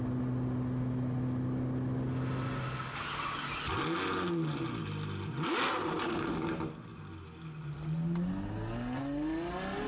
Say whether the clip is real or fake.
real